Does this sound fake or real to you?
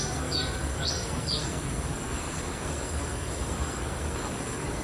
fake